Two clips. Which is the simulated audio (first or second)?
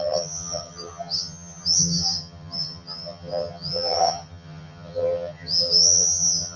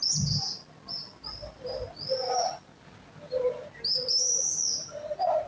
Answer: first